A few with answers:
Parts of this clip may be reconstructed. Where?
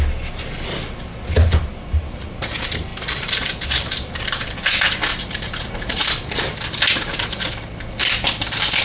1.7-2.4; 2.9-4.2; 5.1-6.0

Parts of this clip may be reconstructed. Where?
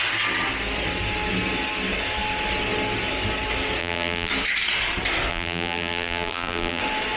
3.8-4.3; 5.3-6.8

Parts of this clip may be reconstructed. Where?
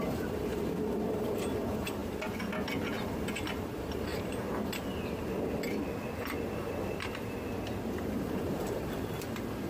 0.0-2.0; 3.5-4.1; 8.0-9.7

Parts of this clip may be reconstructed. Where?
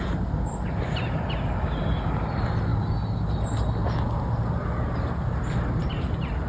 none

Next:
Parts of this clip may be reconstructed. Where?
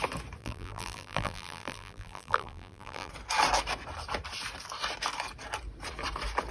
0.4-3.1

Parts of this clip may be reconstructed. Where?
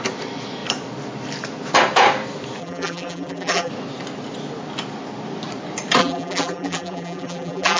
2.6-3.7; 6.0-7.8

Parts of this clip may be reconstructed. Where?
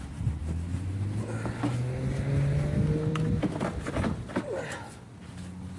0.4-3.9